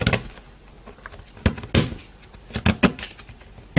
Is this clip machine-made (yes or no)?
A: no